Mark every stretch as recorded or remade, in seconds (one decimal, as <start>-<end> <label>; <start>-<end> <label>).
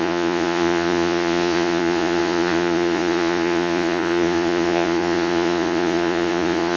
0.0-6.8 remade